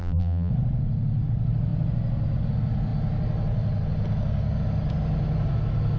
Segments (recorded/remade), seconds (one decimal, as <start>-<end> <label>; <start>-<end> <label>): 0.0-0.5 remade; 0.5-6.0 recorded